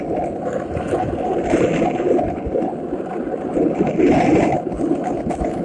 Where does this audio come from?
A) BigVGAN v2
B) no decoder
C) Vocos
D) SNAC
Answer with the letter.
B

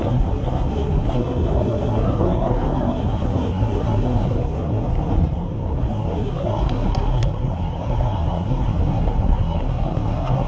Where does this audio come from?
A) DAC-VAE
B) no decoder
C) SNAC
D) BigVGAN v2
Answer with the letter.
C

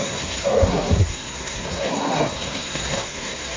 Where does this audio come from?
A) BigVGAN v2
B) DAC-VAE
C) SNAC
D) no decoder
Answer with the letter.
C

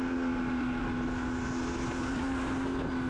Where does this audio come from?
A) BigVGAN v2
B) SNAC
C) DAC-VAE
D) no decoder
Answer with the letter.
D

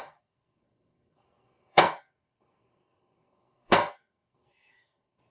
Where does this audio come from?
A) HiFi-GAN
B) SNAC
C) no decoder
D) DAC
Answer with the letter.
B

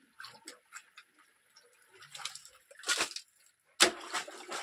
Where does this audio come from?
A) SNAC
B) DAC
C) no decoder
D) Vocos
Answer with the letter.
C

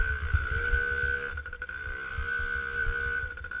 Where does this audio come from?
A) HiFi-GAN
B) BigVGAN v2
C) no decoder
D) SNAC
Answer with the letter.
C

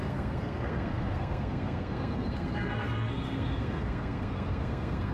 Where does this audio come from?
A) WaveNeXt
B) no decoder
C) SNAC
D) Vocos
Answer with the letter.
C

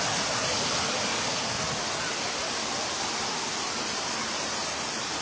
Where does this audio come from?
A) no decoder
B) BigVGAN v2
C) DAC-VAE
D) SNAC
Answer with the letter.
A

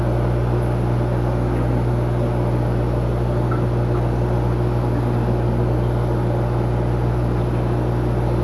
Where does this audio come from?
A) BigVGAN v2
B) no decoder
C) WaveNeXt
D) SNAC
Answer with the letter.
B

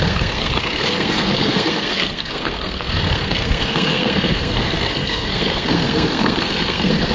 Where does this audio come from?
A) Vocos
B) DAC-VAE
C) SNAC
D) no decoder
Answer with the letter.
C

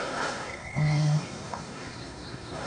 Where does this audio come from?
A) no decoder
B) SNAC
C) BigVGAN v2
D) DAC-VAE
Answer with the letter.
B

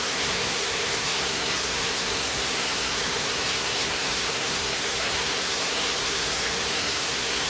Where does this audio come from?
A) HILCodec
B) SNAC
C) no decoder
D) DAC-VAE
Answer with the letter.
B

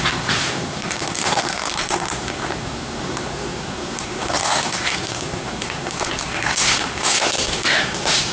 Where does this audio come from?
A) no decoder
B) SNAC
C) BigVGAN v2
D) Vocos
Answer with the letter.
B